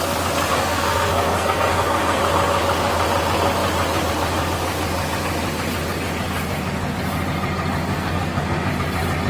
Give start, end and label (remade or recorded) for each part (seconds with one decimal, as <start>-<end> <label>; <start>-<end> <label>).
0.0-0.5 recorded; 0.5-2.2 remade; 2.2-7.9 recorded; 7.9-8.7 remade; 8.7-9.3 recorded